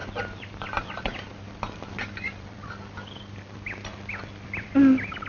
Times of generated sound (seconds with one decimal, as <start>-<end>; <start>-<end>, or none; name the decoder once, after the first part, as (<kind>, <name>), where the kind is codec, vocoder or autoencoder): 0.0-2.7 (vocoder, BigVGAN v2); 4.1-4.7